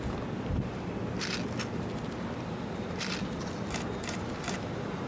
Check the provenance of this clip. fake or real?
real